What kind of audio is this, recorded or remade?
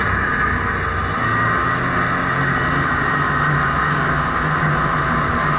recorded